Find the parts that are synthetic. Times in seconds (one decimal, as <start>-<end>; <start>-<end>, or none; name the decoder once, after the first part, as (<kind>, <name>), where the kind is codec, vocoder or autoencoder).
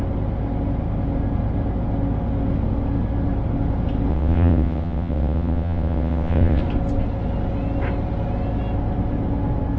4.1-6.6 (vocoder, WaveNeXt)